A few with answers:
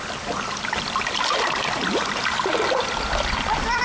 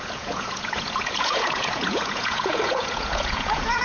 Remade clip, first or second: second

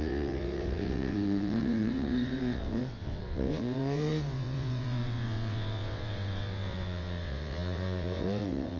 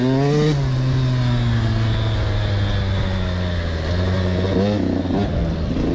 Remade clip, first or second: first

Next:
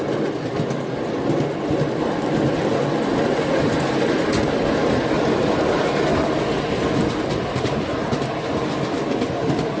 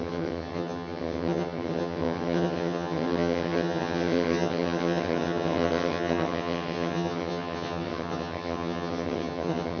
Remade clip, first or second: second